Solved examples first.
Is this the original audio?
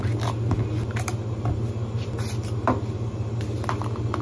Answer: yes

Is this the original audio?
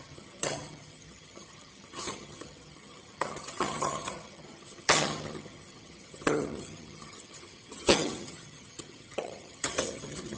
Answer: no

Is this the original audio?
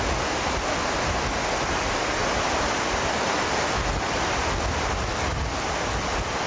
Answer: yes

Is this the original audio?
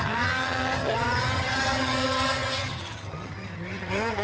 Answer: no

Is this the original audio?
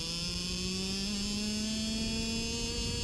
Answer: yes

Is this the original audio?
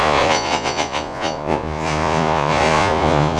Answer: no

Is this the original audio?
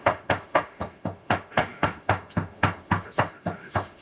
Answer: no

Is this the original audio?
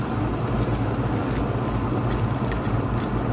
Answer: yes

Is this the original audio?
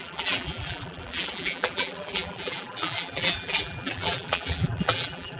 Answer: no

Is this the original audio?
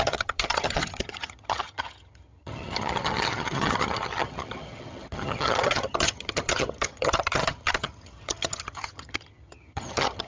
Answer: no